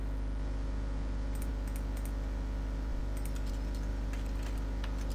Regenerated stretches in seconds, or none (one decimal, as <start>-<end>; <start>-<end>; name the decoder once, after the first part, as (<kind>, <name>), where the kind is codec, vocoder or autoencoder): 0.0-1.5 (vocoder, BigVGAN v2); 2.9-3.5; 3.9-5.1